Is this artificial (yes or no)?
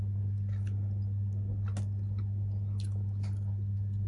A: no